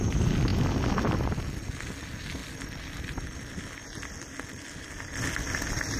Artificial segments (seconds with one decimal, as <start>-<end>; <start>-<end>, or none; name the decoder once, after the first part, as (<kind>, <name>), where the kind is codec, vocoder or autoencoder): none